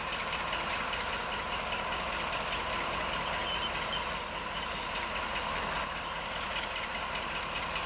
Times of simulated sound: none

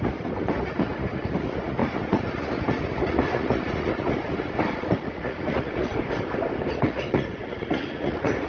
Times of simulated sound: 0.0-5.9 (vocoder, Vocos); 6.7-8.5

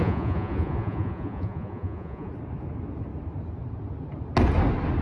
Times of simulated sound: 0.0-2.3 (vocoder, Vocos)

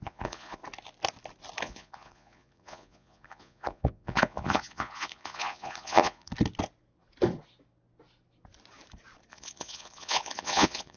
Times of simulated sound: 0.0-0.6 (vocoder, Vocos); 1.6-6.3; 9.3-11.0

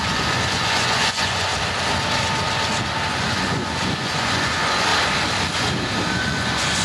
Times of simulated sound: 0.0-1.5 (vocoder, Vocos); 3.1-4.9; 6.1-6.8

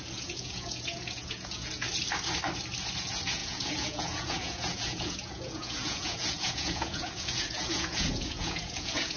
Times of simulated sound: 0.0-1.9 (vocoder, Vocos); 3.0-9.2

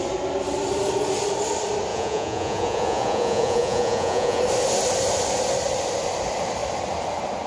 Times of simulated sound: 1.9-4.4 (vocoder, Vocos)